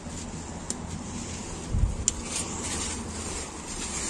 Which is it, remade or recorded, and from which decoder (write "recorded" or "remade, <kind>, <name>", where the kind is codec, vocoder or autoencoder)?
recorded